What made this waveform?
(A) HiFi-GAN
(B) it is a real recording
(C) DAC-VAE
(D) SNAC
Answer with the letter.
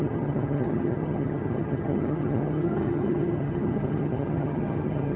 A